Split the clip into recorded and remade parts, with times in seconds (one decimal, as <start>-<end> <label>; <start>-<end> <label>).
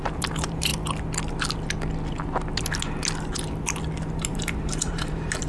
0.0-0.7 remade; 0.7-4.0 recorded; 4.0-5.5 remade